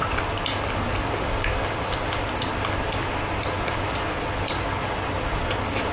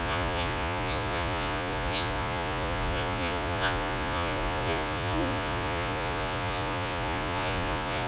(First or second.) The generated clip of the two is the second